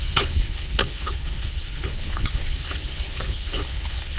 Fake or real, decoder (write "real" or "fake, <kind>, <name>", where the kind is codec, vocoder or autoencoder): fake, codec, HILCodec